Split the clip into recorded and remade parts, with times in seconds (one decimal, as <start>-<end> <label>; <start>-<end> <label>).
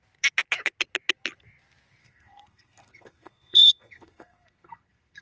0.0-2.0 recorded; 2.0-5.2 remade